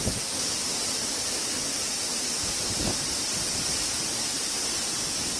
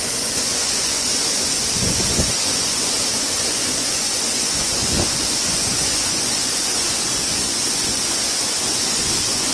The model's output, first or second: second